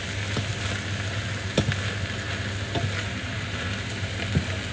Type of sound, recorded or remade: recorded